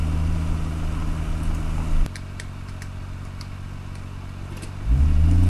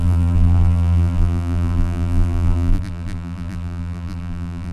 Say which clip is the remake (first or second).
second